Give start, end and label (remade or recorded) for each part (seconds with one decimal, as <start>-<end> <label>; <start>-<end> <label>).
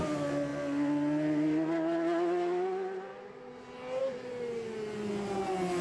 0.0-5.8 recorded